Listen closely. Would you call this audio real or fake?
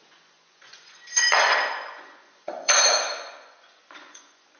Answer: fake